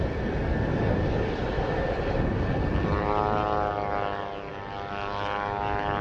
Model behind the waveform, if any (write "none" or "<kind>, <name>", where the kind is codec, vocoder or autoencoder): none